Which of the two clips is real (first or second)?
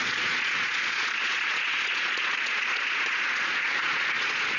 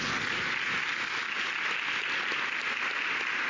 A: second